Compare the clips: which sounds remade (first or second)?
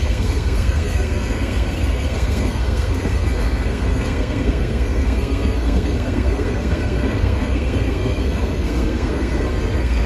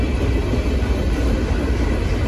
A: first